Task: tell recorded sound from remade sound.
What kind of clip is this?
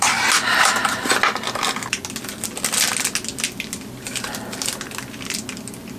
recorded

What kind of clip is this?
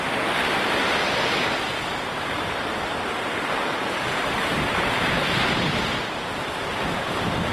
recorded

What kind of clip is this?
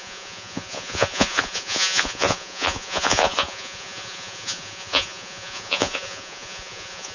remade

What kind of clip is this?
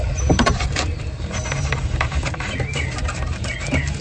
remade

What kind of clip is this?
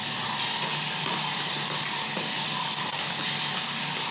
recorded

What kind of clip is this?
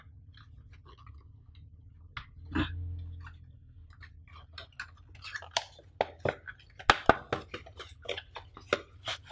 recorded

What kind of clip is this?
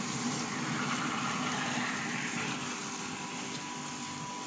recorded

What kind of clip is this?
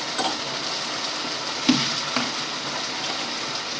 recorded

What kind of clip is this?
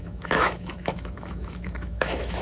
remade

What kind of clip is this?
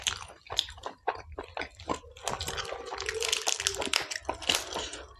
recorded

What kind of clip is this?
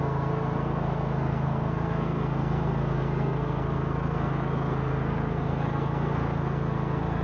remade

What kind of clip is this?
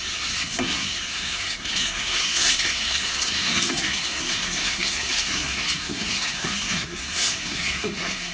remade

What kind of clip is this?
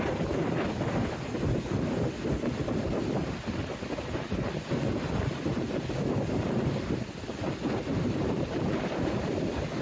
recorded